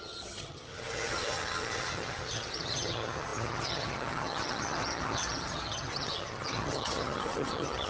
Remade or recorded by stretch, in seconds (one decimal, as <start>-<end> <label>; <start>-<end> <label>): 0.0-7.9 remade